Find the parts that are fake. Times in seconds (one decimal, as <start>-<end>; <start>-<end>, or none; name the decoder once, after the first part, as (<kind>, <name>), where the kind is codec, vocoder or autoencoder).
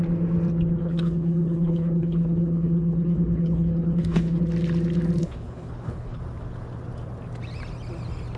0.8-4.4 (codec, HILCodec); 5.2-6.2